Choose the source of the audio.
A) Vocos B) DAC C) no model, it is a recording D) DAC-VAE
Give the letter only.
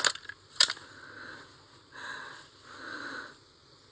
C